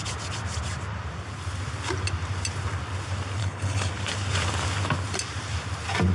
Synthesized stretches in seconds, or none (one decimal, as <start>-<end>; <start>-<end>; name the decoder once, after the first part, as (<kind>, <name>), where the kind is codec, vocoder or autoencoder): 3.4-3.9 (codec, HILCodec)